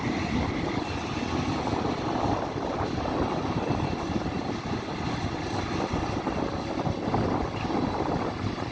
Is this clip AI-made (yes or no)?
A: no